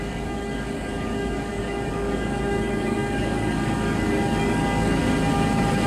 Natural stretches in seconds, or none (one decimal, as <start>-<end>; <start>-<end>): 5.0-5.9